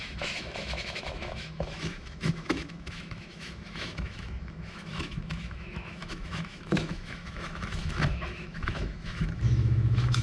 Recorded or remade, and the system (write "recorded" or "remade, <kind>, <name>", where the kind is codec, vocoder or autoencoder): remade, autoencoder, DAC-VAE